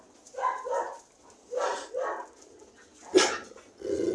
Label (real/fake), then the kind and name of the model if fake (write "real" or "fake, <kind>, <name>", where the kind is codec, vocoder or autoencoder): real